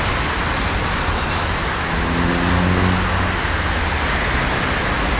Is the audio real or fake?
real